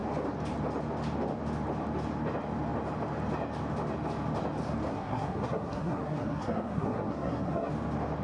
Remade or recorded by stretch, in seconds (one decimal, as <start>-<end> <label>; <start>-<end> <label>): 0.0-4.9 recorded; 4.9-7.7 remade; 7.7-8.2 recorded